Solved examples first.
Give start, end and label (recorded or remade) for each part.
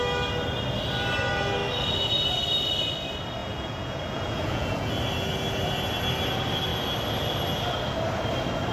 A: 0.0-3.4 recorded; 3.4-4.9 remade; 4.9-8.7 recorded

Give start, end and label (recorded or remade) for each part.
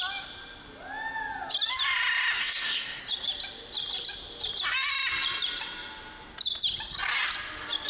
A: 0.0-2.4 recorded; 2.4-3.0 remade; 3.0-7.9 recorded